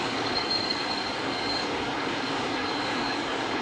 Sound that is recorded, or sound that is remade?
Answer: remade